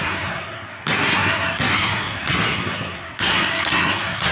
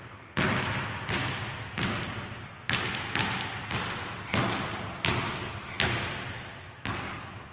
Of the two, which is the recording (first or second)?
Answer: second